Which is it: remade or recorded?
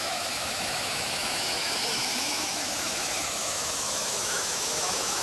remade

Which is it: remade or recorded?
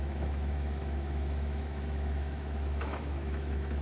remade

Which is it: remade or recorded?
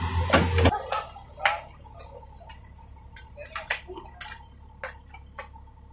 recorded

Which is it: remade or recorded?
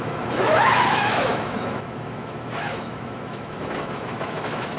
remade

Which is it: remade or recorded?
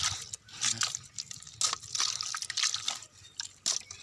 recorded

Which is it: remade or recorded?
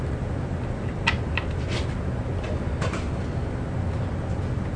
recorded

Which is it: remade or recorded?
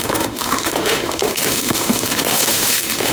remade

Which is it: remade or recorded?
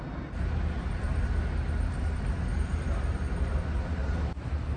recorded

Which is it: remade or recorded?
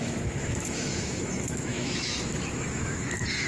remade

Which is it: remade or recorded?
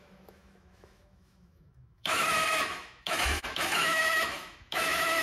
remade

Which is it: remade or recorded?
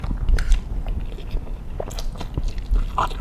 recorded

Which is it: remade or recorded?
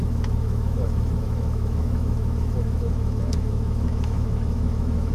remade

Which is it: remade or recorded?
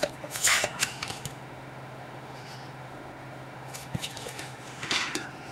remade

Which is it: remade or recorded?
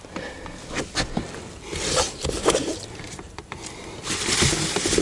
recorded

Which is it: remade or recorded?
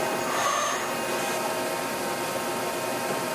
recorded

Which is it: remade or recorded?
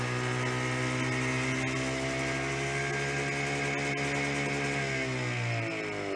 recorded